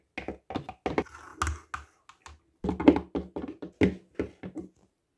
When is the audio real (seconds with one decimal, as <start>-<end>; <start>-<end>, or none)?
0.0-5.2